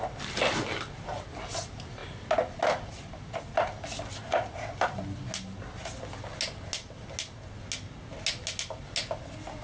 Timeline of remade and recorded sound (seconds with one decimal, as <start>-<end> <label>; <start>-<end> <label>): 0.0-9.6 recorded